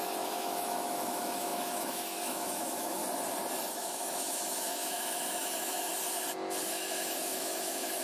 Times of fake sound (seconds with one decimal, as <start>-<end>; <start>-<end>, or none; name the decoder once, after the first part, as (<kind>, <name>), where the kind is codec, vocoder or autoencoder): 0.0-3.0 (autoencoder, DAC-VAE); 3.7-5.9; 6.7-8.0